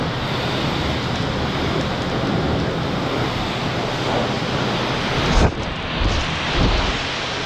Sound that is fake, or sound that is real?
real